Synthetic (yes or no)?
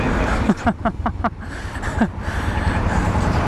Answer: yes